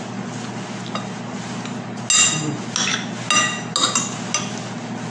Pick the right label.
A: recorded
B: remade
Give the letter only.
A